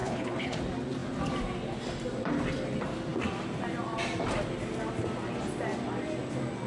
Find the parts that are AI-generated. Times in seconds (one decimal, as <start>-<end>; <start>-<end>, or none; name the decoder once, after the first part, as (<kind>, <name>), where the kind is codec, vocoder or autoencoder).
0.0-0.6 (codec, HILCodec)